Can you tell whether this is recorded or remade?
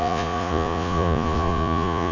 remade